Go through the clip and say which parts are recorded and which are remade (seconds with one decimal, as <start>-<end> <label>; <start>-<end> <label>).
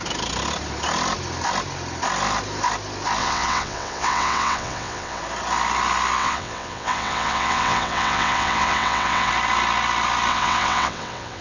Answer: 0.0-3.2 recorded; 3.2-5.2 remade; 5.2-6.2 recorded; 6.2-9.3 remade; 9.3-10.3 recorded; 10.3-11.4 remade